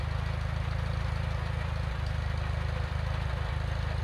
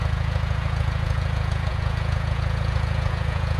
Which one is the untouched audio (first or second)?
first